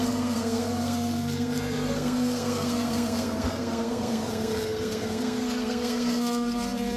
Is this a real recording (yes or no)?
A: no